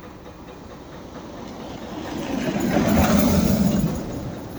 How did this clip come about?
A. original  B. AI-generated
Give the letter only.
A